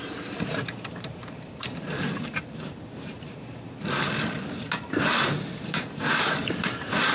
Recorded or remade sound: remade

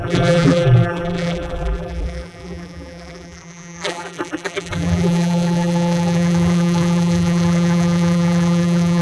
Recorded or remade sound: remade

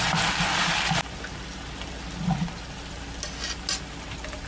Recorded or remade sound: recorded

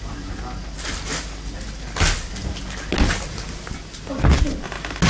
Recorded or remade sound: recorded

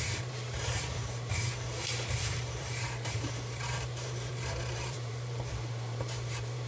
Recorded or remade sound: remade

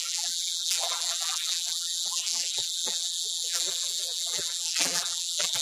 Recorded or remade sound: remade